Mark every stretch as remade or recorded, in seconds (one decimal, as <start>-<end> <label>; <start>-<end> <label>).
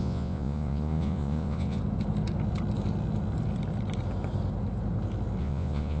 0.0-1.8 remade; 1.8-5.4 recorded; 5.4-6.0 remade